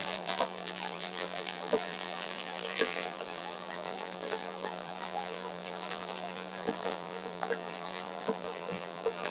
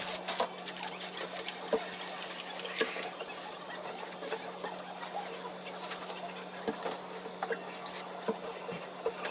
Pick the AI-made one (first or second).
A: first